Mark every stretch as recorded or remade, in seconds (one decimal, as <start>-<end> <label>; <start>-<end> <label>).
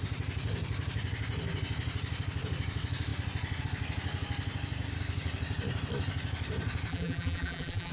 0.0-6.9 recorded; 6.9-7.9 remade